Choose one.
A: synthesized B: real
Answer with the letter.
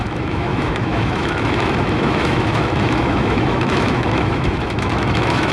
A